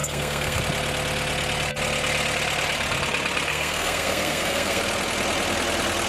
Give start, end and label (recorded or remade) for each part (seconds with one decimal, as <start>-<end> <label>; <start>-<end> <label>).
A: 0.0-0.6 remade; 0.6-3.5 recorded; 3.5-4.8 remade; 4.8-6.1 recorded